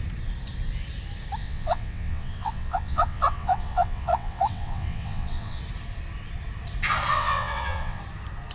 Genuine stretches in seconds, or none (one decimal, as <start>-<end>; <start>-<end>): 0.0-1.4; 5.6-7.1; 8.0-8.5